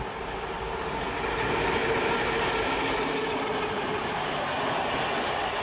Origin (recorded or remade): recorded